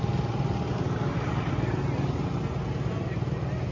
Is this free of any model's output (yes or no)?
yes